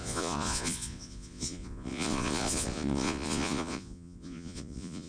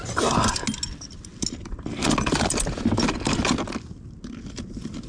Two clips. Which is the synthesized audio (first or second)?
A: first